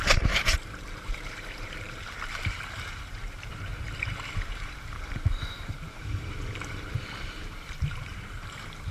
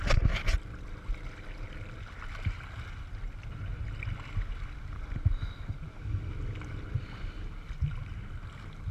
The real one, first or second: second